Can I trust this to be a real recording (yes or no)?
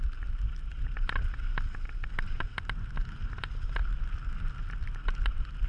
yes